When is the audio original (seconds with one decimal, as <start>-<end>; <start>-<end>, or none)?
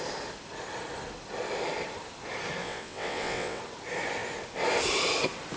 0.0-2.6; 3.6-5.6